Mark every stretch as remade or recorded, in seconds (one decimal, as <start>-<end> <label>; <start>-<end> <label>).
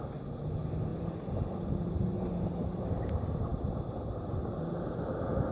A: 0.0-0.9 recorded; 0.9-2.8 remade; 2.8-5.5 recorded